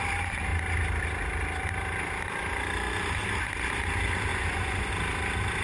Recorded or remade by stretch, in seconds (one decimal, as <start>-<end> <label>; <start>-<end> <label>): 0.0-4.3 recorded; 4.3-4.9 remade; 4.9-5.6 recorded